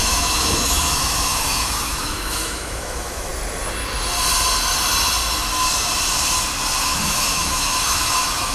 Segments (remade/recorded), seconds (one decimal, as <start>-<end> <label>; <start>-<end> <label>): 0.0-3.3 remade; 3.3-6.8 recorded; 6.8-8.5 remade